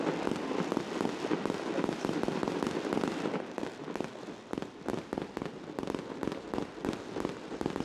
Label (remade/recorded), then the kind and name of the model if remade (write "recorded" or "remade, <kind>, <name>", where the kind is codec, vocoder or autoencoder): recorded